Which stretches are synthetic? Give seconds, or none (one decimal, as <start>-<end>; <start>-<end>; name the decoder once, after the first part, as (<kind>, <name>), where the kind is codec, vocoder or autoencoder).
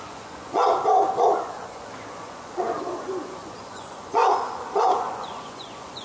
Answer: 0.0-0.6 (vocoder, Vocos); 1.1-6.0